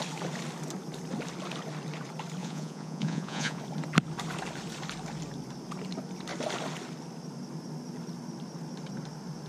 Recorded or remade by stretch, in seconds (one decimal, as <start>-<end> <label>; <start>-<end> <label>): 0.0-2.4 recorded; 2.4-3.6 remade; 3.6-9.5 recorded